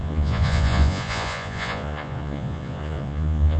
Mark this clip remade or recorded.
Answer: remade